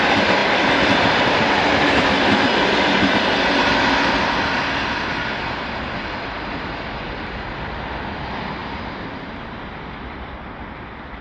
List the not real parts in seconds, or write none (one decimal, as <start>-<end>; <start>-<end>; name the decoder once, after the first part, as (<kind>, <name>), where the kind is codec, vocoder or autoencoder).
0.4-2.1 (vocoder, BigVGAN v2); 8.6-9.2